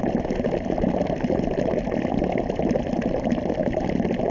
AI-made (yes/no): no